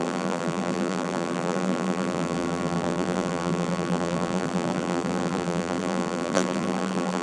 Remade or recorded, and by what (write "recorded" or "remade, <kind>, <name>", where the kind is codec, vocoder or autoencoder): remade, vocoder, BigVGAN v2